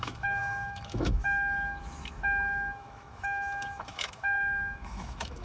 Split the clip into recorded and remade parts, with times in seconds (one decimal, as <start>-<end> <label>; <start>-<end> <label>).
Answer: 0.0-5.4 remade